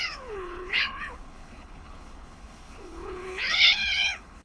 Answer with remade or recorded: remade